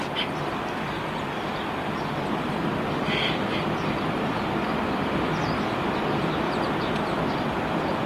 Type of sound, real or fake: real